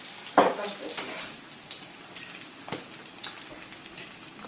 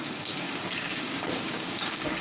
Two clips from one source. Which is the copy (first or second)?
second